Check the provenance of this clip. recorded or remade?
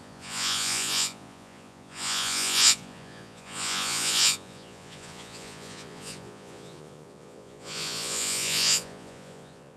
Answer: remade